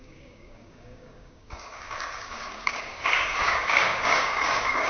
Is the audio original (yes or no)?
no